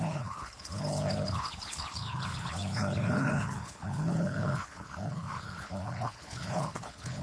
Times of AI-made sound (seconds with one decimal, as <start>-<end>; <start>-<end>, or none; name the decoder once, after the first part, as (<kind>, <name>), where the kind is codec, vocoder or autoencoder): 0.0-7.2 (codec, HILCodec)